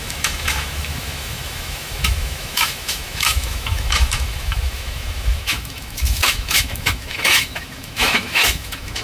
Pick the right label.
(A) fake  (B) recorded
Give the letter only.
A